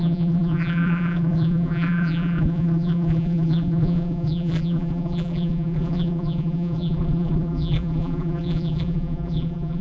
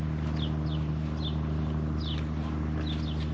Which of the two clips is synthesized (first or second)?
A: first